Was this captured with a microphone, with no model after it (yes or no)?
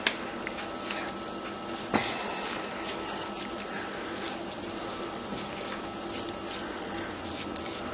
yes